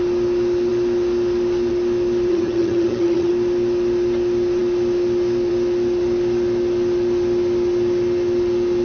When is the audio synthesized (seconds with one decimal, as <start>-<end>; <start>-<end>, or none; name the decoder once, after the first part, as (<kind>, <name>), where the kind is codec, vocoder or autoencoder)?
2.3-3.3 (vocoder, HiFi-GAN)